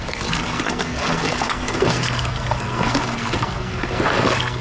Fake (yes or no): yes